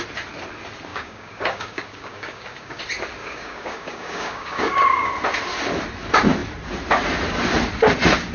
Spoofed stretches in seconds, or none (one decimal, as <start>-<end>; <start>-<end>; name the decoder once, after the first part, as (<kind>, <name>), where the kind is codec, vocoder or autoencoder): 0.9-2.8 (codec, DAC); 3.2-5.1